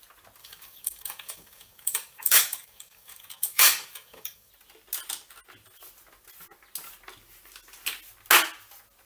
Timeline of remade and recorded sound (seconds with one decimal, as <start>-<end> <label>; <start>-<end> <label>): 0.0-0.4 recorded; 0.4-4.5 remade; 4.5-9.1 recorded